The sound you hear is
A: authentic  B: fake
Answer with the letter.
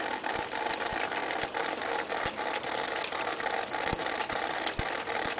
A